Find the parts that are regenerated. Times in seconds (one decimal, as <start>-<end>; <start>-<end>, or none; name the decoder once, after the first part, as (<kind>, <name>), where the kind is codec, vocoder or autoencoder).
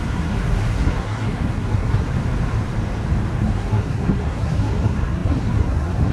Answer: 0.0-2.2 (codec, SNAC); 3.4-6.1